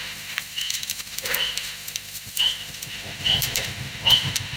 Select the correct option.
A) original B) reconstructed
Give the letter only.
B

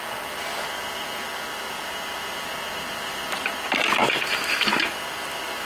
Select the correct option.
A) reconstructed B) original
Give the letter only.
B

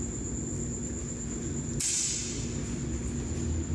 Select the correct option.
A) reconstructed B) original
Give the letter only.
B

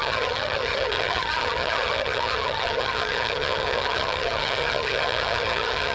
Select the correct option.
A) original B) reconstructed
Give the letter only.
B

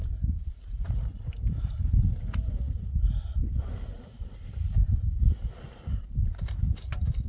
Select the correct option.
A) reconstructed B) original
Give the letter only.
B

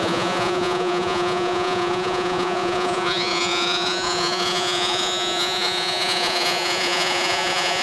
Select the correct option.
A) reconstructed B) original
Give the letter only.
A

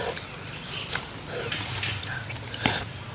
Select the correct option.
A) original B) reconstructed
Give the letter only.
A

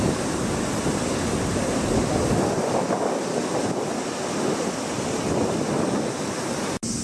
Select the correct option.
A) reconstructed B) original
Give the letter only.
B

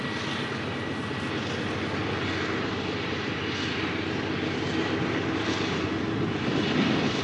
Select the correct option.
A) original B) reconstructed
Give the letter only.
A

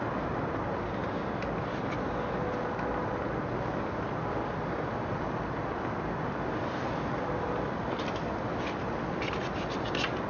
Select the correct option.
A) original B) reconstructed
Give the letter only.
A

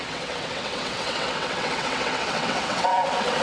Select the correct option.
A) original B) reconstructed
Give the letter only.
B